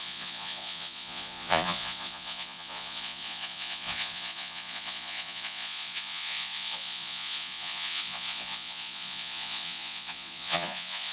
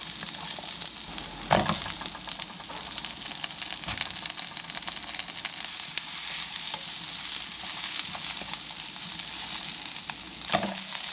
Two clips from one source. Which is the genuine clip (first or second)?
second